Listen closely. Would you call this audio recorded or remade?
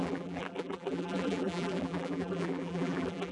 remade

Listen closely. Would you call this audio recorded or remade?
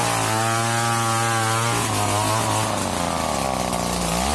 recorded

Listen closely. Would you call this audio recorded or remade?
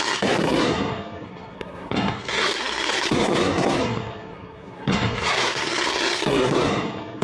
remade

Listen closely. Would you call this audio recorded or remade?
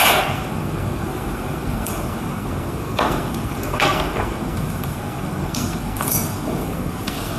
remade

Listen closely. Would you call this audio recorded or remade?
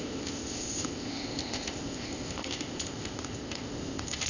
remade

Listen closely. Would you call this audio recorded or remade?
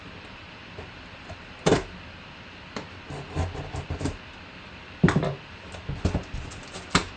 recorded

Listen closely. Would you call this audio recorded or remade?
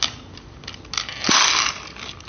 recorded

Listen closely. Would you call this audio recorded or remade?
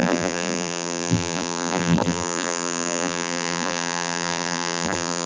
remade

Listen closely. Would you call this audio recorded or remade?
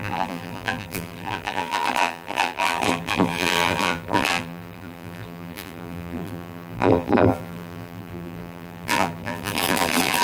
remade